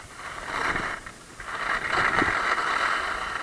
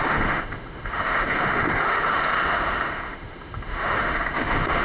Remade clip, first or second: second